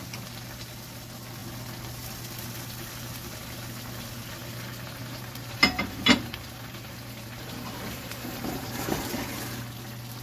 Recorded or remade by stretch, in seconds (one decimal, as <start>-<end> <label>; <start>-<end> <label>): 0.0-4.4 recorded; 4.4-9.0 remade; 9.0-10.2 recorded